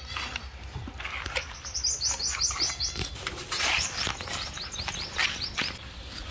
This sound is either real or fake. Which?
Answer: real